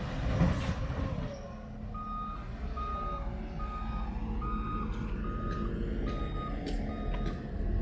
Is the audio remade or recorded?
recorded